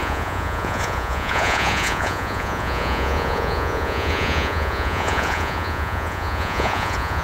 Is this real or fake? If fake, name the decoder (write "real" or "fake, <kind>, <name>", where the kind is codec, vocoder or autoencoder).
fake, vocoder, Vocos